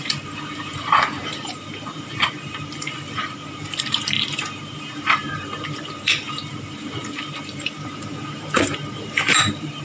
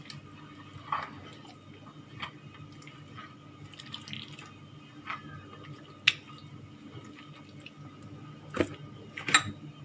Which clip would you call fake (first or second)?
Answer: first